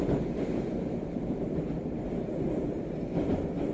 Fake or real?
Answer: fake